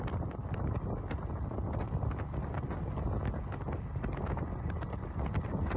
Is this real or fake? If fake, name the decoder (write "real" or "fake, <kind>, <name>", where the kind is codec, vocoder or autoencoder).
real